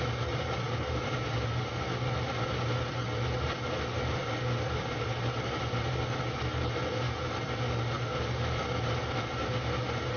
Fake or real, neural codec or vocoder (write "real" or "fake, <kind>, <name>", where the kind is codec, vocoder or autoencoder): real